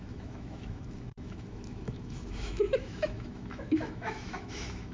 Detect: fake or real fake